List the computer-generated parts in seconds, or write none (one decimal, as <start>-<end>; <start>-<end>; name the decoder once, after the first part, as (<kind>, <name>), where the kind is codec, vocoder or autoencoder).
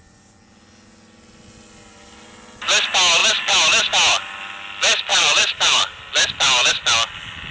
5.1-6.0 (vocoder, BigVGAN v2)